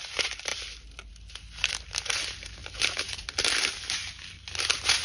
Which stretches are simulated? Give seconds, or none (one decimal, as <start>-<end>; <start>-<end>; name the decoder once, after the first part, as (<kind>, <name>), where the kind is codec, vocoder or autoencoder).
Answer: none